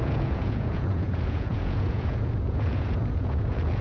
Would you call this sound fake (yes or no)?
yes